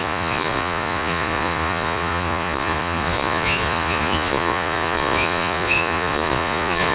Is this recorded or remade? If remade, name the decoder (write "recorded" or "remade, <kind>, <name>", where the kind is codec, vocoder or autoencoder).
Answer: remade, vocoder, Vocos